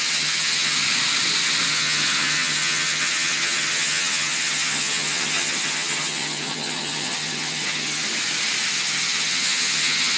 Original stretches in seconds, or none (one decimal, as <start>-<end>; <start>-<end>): 0.8-1.7; 8.0-8.7